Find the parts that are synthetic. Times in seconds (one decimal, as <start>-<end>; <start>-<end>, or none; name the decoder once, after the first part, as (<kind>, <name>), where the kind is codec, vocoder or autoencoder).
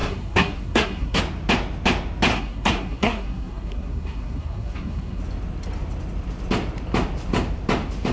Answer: 0.0-1.2 (codec, SNAC); 2.3-5.2